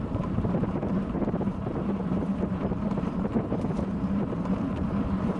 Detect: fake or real fake